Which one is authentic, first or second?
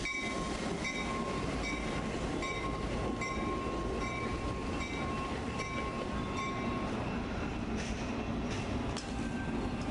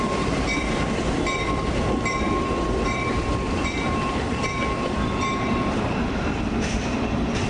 first